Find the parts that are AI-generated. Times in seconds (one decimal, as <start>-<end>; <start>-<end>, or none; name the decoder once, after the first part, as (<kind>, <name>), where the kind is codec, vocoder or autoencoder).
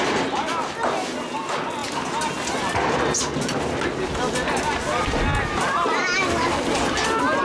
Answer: none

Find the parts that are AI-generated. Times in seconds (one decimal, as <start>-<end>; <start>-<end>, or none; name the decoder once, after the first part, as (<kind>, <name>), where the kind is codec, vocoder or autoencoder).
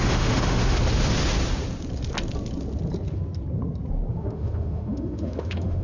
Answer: 0.0-0.6 (autoencoder, DAC-VAE); 4.1-5.8